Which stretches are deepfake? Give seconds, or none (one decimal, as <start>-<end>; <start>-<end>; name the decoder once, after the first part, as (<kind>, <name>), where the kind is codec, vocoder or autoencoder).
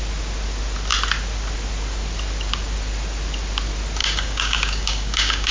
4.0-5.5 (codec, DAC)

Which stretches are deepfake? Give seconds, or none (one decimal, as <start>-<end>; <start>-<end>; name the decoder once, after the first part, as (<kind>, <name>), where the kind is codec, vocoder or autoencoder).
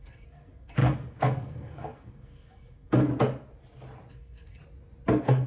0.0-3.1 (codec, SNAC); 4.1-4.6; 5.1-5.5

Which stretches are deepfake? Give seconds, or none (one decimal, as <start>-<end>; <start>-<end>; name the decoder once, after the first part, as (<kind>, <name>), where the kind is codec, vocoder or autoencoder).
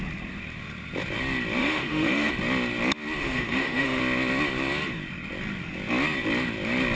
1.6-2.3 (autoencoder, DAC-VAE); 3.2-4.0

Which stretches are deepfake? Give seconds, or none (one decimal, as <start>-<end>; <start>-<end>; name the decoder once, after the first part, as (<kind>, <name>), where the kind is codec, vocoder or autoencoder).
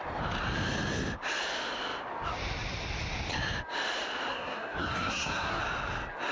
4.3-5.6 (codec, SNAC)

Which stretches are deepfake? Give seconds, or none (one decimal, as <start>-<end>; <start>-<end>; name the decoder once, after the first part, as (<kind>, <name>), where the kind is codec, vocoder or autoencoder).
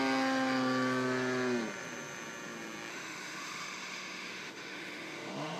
2.9-5.6 (autoencoder, DAC-VAE)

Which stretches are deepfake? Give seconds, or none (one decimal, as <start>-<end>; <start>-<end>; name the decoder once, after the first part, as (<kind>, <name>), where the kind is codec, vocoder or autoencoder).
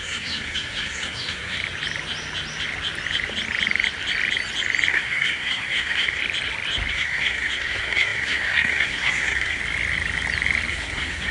0.0-1.6 (codec, SNAC); 4.9-6.2; 6.9-9.6; 10.7-11.3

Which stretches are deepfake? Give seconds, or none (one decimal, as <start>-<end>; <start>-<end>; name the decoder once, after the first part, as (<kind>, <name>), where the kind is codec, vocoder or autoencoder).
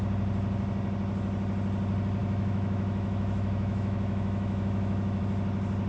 2.2-5.2 (autoencoder, DAC-VAE)